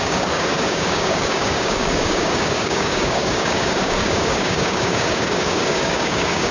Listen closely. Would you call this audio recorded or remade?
remade